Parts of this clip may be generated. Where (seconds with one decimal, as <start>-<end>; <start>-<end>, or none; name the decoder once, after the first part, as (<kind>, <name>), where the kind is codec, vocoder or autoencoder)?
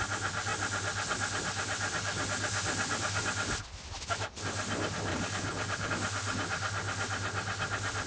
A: 5.1-5.9 (codec, HILCodec)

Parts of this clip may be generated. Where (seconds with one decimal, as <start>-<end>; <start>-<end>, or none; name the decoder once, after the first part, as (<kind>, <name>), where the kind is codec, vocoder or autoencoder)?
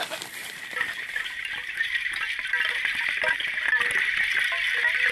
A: 0.4-2.3 (vocoder, BigVGAN v2)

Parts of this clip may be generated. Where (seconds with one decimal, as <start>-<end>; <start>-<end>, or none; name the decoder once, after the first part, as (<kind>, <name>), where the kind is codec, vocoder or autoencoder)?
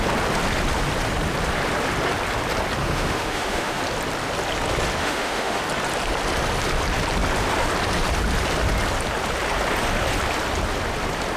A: 2.8-3.8 (autoencoder, DAC-VAE); 5.0-5.6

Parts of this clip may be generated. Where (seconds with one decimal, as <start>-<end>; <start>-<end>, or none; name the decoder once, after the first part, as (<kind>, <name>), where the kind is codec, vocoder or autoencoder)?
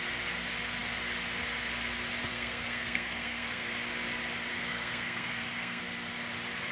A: 2.3-3.7 (codec, SNAC); 4.5-5.8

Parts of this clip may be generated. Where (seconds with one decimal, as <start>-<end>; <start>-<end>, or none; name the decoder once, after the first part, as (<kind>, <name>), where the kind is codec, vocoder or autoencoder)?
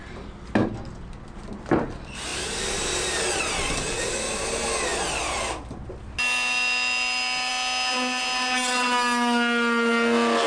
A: none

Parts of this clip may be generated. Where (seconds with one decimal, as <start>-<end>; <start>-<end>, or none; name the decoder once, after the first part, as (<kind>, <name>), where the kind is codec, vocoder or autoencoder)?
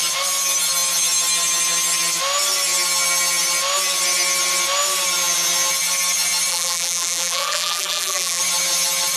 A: 6.5-8.4 (vocoder, BigVGAN v2)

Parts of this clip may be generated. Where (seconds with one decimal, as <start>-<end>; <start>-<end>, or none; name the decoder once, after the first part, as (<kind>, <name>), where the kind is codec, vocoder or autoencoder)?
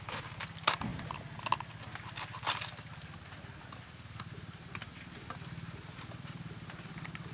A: none